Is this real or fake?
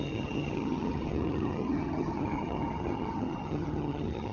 fake